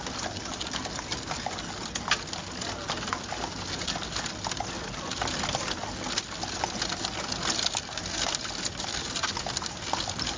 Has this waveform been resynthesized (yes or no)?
no